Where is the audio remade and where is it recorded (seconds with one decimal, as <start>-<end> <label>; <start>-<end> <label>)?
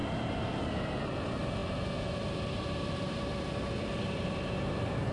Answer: 0.0-5.1 recorded